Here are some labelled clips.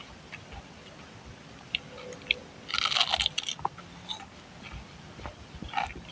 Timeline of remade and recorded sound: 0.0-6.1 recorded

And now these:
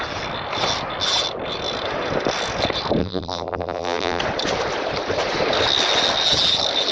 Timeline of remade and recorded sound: 0.0-3.0 recorded; 3.0-4.2 remade; 4.2-6.9 recorded